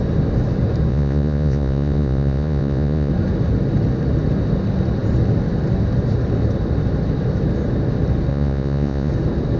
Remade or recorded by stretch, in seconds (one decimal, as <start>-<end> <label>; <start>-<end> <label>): 0.0-0.9 recorded; 0.9-3.1 remade; 3.1-8.3 recorded; 8.3-9.1 remade; 9.1-9.6 recorded